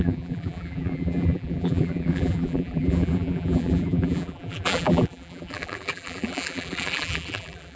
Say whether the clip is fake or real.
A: fake